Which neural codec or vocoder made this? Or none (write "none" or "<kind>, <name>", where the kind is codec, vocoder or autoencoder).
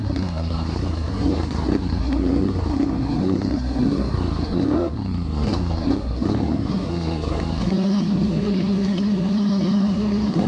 codec, SNAC